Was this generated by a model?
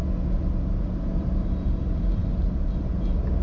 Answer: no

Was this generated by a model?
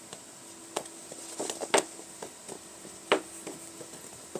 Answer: no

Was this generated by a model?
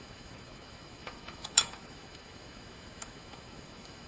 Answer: yes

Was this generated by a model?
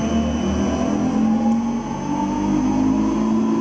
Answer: no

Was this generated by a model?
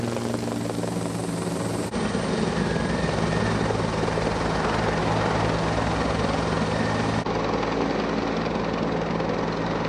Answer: no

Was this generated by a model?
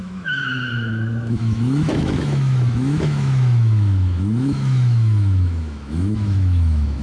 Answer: yes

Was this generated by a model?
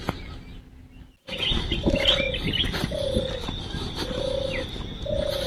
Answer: no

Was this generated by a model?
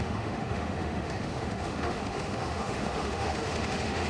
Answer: yes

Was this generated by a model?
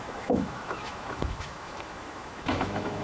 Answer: yes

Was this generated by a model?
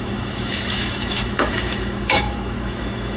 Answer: yes